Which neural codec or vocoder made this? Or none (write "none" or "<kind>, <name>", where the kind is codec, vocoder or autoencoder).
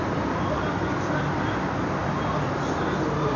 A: none